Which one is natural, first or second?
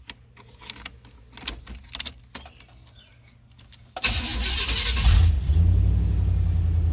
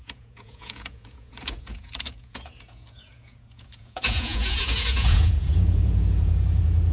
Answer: first